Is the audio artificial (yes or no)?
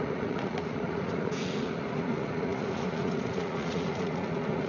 yes